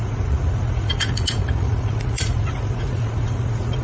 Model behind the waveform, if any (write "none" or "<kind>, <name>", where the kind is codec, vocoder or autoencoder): vocoder, Vocos